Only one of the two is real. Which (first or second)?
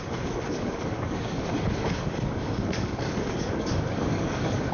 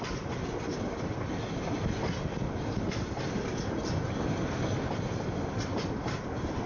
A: second